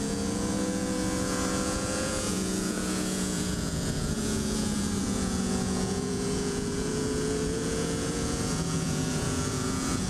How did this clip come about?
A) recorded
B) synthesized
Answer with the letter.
B